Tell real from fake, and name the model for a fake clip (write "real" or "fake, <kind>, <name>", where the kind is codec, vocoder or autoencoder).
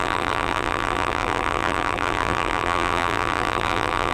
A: fake, vocoder, BigVGAN v2